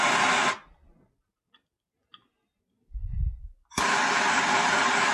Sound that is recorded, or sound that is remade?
recorded